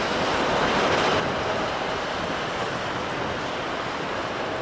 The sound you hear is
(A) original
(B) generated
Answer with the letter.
B